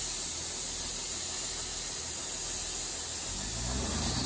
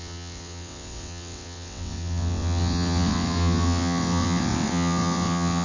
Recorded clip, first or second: first